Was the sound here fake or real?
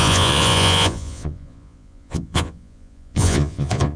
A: fake